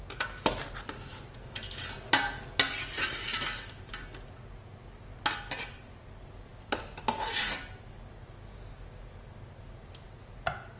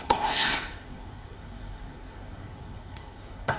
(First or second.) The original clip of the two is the first